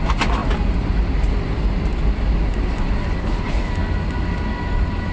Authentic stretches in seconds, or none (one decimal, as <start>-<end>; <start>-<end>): 0.0-3.2; 3.7-5.1